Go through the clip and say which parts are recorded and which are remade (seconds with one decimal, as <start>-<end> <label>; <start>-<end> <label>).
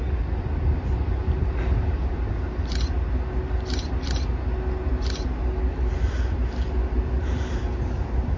0.0-8.4 recorded